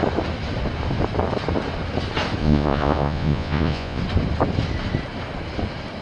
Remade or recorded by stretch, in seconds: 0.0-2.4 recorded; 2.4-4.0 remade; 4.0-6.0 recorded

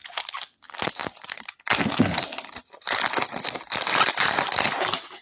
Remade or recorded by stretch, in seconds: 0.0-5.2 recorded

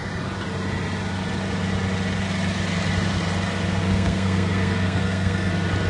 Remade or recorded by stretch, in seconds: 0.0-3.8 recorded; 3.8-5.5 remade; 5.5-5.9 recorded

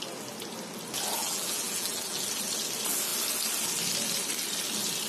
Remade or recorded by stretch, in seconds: 0.0-1.2 recorded; 1.2-2.2 remade; 2.2-5.1 recorded

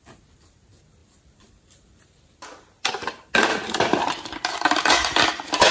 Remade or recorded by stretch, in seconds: 0.0-1.0 recorded; 1.0-2.9 remade; 2.9-3.5 recorded; 3.5-4.9 remade; 4.9-5.7 recorded

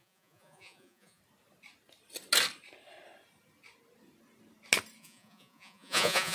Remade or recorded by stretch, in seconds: 0.0-1.2 remade; 1.2-5.0 recorded; 5.0-6.3 remade